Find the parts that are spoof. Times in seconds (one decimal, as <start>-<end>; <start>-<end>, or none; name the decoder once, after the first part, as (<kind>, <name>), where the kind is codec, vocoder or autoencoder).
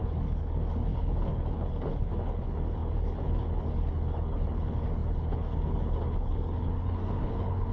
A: 0.0-7.7 (codec, HILCodec)